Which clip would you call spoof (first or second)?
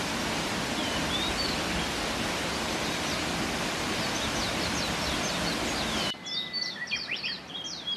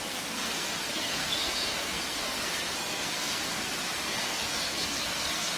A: second